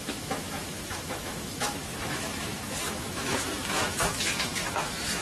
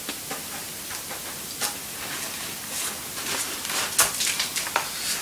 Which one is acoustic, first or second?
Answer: second